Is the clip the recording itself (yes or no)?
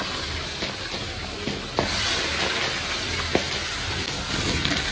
yes